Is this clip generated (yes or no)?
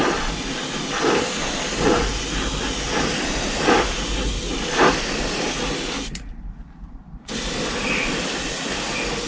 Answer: no